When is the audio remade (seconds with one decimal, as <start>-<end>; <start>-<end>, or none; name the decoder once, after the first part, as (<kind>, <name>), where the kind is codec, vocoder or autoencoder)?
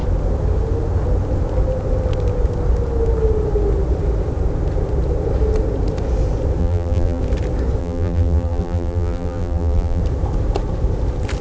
6.6-7.2 (vocoder, BigVGAN v2); 7.8-10.0